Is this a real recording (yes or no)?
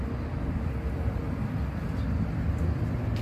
yes